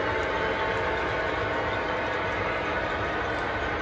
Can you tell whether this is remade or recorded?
recorded